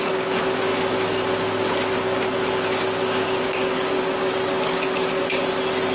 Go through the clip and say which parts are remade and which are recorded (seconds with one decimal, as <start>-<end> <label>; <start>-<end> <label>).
0.0-5.9 recorded